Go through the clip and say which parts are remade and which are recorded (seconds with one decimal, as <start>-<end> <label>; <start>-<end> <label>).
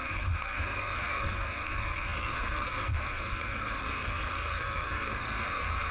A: 0.0-5.9 remade